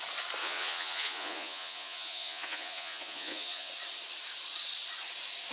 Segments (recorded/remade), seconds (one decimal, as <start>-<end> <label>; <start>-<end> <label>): 0.0-0.4 recorded; 0.4-3.7 remade; 3.7-5.5 recorded